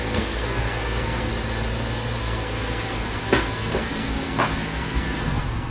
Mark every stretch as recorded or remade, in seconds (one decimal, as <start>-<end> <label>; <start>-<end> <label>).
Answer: 0.0-1.3 remade; 1.3-2.2 recorded; 2.2-5.7 remade

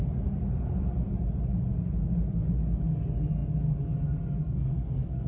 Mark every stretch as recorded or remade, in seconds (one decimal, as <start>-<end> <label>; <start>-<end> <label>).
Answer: 0.0-4.4 recorded; 4.4-5.3 remade

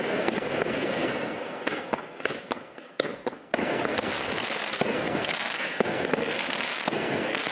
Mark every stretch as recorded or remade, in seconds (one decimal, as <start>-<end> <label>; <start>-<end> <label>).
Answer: 0.0-7.5 remade

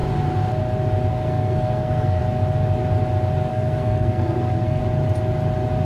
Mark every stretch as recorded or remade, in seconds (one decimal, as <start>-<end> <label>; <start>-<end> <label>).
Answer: 0.0-1.1 recorded; 1.1-2.2 remade; 2.2-3.5 recorded; 3.5-4.8 remade; 4.8-5.8 recorded

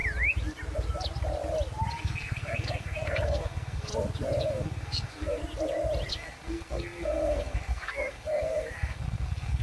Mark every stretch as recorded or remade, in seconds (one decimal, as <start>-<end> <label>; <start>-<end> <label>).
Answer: 0.0-1.9 recorded; 1.9-3.9 remade; 3.9-4.4 recorded; 4.4-5.4 remade; 5.4-6.1 recorded; 6.1-9.6 remade

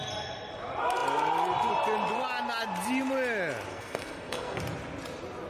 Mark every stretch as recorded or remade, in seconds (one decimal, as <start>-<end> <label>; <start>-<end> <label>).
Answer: 0.0-3.7 recorded; 3.7-4.6 remade; 4.6-5.5 recorded

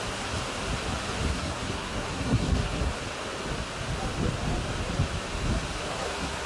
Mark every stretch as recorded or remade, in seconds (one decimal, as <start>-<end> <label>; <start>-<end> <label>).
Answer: 0.0-1.3 recorded; 1.3-2.9 remade; 2.9-5.8 recorded; 5.8-6.5 remade

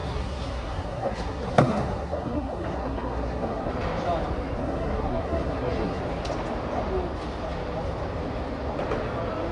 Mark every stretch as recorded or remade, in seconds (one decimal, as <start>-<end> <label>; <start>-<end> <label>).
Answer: 0.0-3.7 remade; 3.7-4.6 recorded; 4.6-6.0 remade; 6.0-9.5 recorded